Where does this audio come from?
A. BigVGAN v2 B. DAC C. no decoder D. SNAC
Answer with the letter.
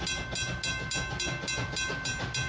C